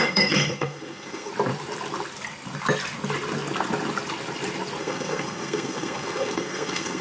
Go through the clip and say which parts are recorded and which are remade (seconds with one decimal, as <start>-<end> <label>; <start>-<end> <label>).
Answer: 0.0-1.3 remade; 1.3-4.8 recorded; 4.8-7.0 remade